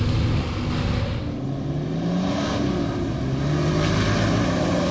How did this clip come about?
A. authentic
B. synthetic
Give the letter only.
A